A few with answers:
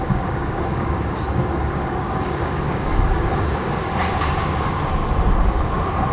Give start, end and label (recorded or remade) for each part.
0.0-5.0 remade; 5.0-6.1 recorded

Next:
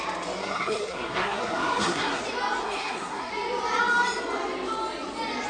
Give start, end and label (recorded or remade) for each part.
0.0-0.4 recorded; 0.4-2.2 remade; 2.2-2.6 recorded; 2.6-3.3 remade; 3.3-5.5 recorded

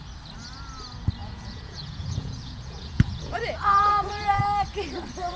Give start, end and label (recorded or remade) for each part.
0.0-1.2 recorded; 1.2-4.4 remade; 4.4-5.4 recorded

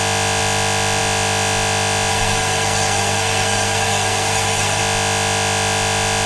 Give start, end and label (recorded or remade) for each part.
0.0-2.1 recorded; 2.1-4.8 remade; 4.8-6.3 recorded